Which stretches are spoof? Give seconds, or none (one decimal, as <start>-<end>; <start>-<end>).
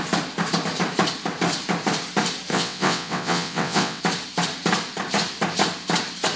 2.5-4.0